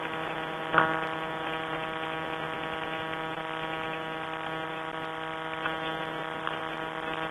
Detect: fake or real real